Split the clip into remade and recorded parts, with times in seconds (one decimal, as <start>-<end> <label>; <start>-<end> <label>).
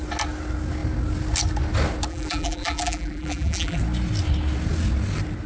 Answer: 0.0-2.1 recorded; 2.1-3.8 remade; 3.8-5.5 recorded